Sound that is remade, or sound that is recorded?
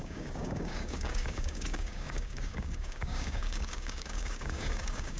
remade